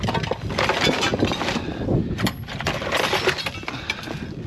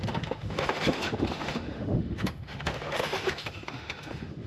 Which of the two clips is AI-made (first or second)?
second